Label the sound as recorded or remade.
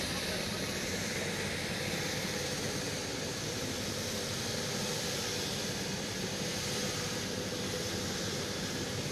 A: remade